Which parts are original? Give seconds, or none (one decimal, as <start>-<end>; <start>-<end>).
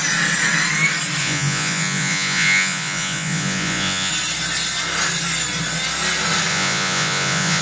0.0-1.2; 4.1-6.5